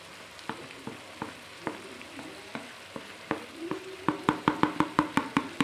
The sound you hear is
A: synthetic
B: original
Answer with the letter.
B